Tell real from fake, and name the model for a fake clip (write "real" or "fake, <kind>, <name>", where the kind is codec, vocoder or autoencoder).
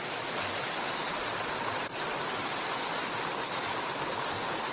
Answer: real